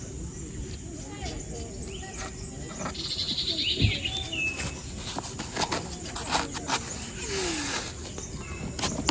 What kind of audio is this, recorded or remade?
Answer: recorded